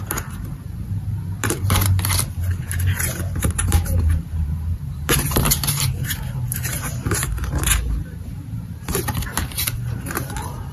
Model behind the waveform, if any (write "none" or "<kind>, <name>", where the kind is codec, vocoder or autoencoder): vocoder, BigVGAN v2